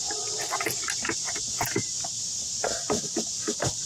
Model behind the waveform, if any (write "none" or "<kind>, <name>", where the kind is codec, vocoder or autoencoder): none